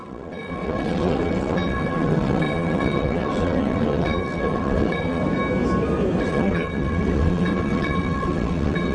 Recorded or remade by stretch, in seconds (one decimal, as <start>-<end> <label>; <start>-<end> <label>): 0.0-5.2 remade; 5.2-6.2 recorded; 6.2-8.9 remade